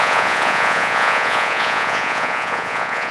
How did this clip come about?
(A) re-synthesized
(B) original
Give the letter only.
A